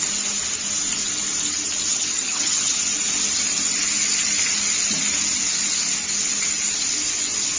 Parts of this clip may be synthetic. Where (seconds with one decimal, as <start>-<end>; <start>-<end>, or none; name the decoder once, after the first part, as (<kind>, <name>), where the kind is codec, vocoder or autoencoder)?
1.9-2.8 (vocoder, HiFi-GAN)